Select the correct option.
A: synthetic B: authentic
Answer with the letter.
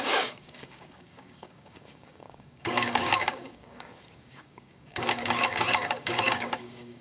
A